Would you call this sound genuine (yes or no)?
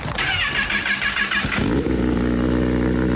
yes